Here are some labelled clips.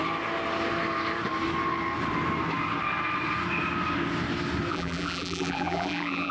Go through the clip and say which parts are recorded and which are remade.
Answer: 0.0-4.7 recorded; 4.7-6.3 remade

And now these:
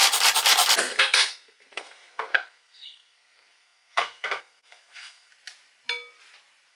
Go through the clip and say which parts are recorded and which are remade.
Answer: 0.0-0.8 recorded; 0.8-5.3 remade; 5.3-6.7 recorded